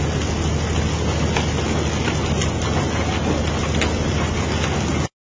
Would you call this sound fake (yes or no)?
no